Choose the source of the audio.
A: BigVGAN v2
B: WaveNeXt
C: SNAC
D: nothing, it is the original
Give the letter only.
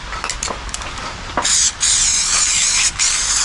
D